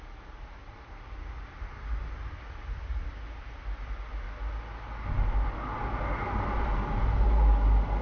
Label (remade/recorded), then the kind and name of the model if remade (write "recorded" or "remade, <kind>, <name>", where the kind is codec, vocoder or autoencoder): recorded